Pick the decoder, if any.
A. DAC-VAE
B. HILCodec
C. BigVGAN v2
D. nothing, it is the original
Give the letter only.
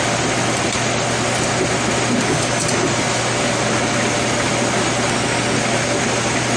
D